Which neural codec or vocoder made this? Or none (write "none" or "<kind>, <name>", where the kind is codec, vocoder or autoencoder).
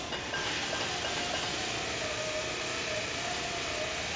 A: none